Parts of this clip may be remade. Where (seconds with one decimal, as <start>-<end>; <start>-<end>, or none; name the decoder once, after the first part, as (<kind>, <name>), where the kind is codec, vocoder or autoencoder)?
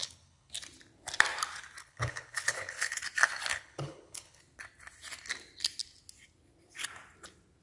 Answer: 0.0-0.5 (codec, HILCodec); 1.8-3.0; 3.5-4.4